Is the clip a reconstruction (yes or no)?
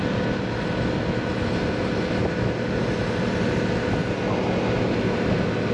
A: no